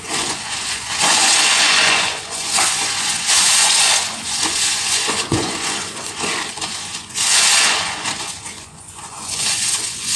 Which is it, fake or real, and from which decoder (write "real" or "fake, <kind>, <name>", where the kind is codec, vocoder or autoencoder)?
fake, vocoder, Vocos